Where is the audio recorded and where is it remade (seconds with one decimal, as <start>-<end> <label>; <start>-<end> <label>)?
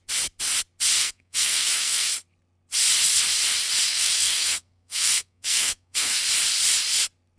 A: 0.0-1.0 recorded; 1.0-2.1 remade; 2.1-3.9 recorded; 3.9-6.2 remade; 6.2-7.4 recorded